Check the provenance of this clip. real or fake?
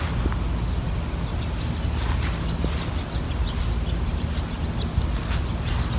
real